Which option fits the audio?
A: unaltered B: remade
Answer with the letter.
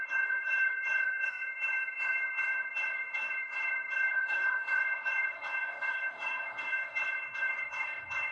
B